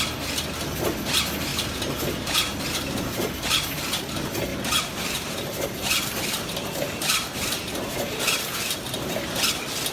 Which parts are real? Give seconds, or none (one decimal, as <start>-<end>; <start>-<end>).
0.0-1.5; 2.6-4.5; 9.1-9.9